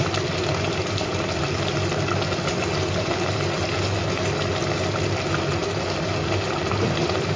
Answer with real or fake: real